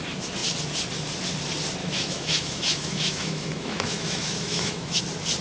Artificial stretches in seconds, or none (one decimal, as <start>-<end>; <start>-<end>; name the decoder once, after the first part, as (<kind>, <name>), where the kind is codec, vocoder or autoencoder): 1.8-5.0 (autoencoder, DAC-VAE)